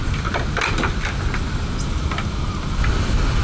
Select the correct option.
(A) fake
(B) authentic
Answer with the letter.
B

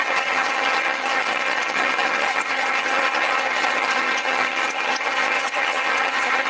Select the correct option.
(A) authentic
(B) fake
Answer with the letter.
B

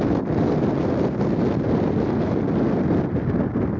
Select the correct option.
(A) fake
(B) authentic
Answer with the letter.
B